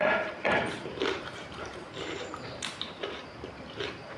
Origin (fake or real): fake